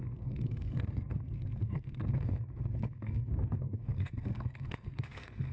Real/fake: fake